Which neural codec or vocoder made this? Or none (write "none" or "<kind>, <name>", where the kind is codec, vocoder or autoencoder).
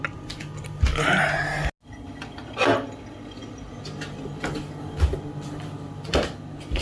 none